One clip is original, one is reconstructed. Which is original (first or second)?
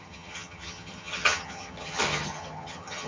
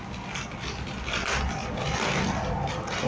second